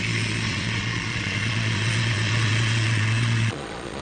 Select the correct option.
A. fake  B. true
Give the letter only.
A